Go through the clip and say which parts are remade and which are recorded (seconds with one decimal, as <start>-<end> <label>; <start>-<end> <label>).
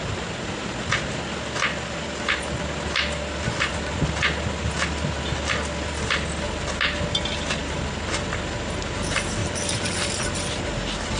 0.0-9.4 recorded; 9.4-10.7 remade; 10.7-11.2 recorded